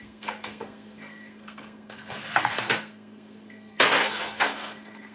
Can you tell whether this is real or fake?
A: fake